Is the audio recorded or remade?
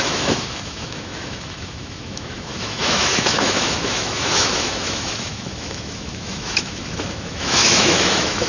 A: remade